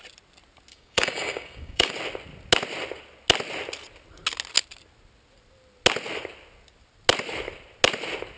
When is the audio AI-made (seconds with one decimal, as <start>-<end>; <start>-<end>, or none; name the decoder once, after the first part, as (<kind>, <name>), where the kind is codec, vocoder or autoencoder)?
0.7-1.9 (codec, DAC)

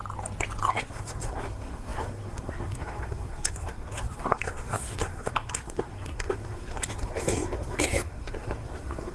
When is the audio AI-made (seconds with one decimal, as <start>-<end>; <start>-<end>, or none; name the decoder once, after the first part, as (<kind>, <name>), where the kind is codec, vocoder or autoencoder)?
0.7-9.1 (codec, SNAC)